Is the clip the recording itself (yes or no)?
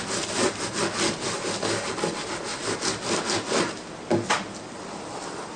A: yes